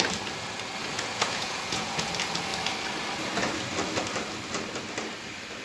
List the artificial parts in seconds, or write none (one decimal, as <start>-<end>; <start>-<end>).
0.8-2.1